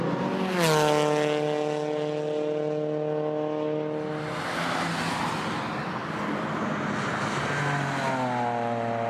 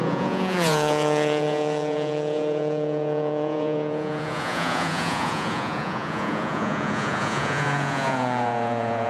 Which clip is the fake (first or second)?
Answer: second